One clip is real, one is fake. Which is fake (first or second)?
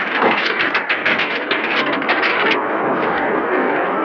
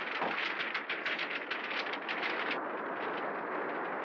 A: first